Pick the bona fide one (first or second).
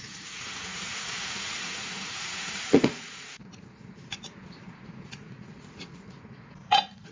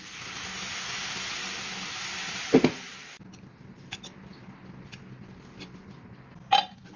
second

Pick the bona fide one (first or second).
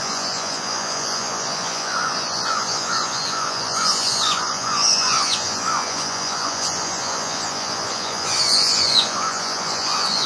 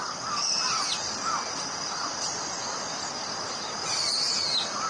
second